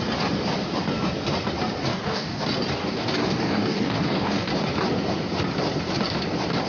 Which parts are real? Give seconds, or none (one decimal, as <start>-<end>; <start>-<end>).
0.0-1.9; 2.4-2.8; 4.5-6.7